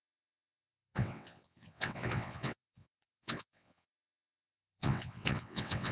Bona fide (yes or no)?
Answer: no